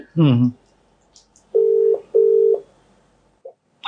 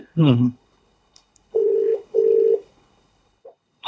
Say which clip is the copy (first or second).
second